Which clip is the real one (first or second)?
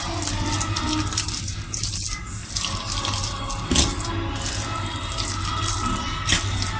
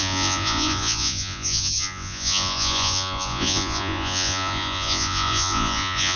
first